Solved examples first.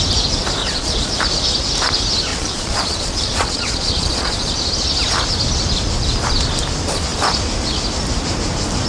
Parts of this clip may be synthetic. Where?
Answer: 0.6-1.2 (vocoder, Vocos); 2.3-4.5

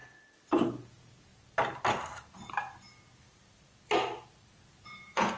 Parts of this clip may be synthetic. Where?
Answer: 0.8-1.3 (vocoder, Vocos); 4.5-5.4

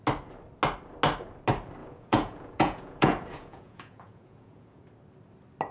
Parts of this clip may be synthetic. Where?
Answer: 1.8-4.8 (vocoder, Vocos)

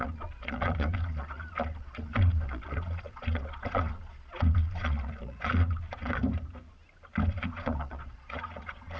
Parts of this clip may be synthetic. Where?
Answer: 0.0-6.2 (vocoder, Vocos); 7.3-9.0

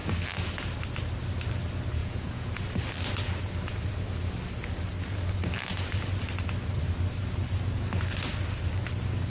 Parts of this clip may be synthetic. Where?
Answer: 2.0-2.6 (vocoder, Vocos)

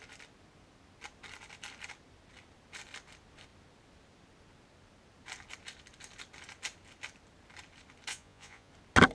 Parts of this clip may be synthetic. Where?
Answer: 8.1-8.7 (vocoder, Vocos)

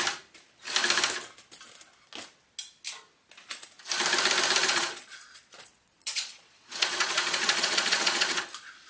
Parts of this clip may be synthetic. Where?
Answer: 4.6-8.4 (vocoder, Vocos)

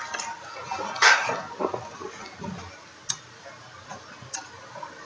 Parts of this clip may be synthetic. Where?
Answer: none